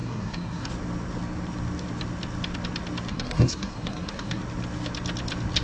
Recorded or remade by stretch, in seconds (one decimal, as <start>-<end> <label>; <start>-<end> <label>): 0.0-0.7 remade; 0.7-3.1 recorded; 3.1-4.4 remade; 4.4-5.6 recorded